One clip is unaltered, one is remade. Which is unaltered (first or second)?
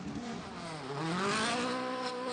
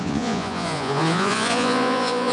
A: first